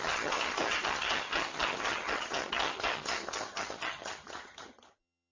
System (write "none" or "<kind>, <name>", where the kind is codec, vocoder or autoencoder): vocoder, HiFi-GAN